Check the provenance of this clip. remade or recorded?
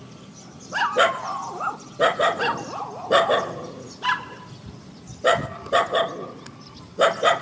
recorded